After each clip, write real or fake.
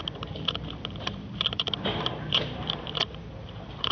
fake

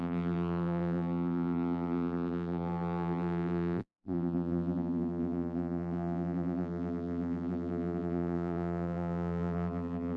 fake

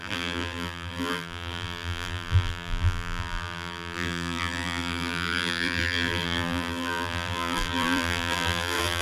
fake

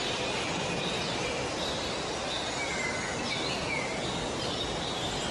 real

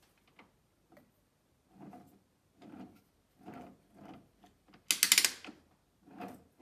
real